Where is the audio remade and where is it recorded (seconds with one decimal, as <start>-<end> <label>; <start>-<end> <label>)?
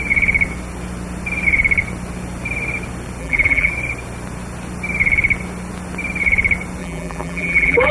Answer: 0.0-3.2 recorded; 3.2-3.7 remade; 3.7-6.8 recorded; 6.8-7.9 remade